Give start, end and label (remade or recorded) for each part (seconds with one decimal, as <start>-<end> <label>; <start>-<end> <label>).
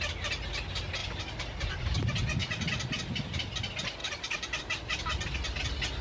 0.0-1.0 recorded; 1.0-1.7 remade; 1.7-4.0 recorded; 4.0-4.6 remade; 4.6-6.0 recorded